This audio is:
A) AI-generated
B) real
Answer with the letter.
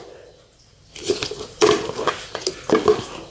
B